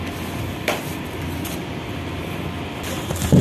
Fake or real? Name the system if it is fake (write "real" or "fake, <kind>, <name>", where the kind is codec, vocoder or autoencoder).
fake, vocoder, BigVGAN v2